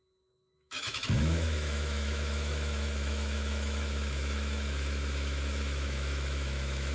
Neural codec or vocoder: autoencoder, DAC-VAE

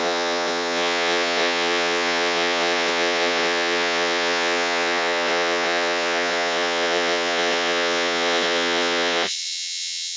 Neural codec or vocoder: vocoder, Vocos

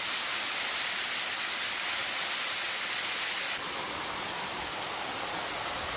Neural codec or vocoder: none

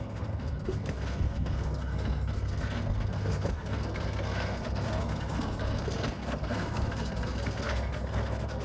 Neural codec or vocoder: codec, SNAC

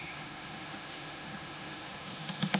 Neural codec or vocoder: autoencoder, DAC-VAE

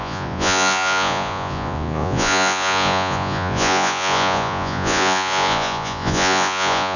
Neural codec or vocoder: vocoder, Vocos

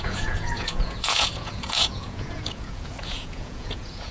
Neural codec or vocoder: vocoder, Vocos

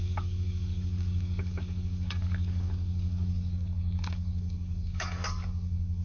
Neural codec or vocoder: codec, DAC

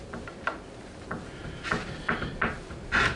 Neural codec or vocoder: none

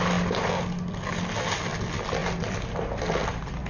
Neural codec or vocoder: none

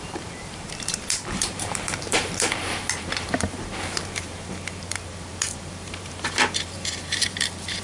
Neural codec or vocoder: vocoder, BigVGAN v2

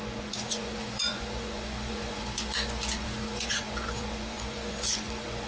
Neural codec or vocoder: vocoder, Vocos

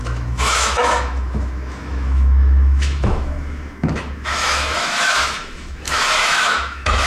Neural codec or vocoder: autoencoder, DAC-VAE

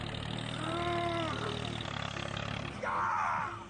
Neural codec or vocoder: none